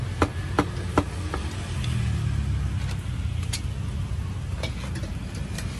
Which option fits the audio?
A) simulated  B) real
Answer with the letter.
B